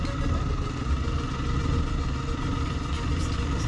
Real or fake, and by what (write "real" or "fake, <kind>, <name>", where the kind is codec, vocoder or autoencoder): real